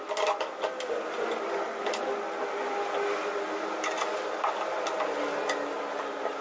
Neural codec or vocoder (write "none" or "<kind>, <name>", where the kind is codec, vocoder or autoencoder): none